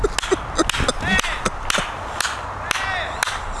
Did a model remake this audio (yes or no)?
no